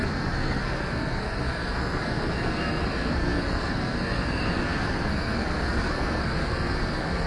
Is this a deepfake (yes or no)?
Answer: yes